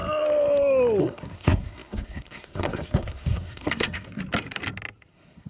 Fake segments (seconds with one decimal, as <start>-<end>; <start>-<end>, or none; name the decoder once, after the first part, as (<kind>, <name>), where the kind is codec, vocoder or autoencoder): 1.0-4.2 (codec, SNAC); 5.1-5.5